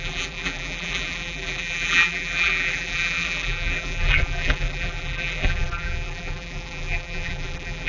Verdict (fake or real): fake